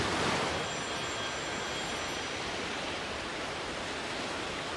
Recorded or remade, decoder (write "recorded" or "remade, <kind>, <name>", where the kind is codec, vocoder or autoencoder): recorded